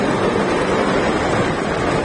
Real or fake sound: real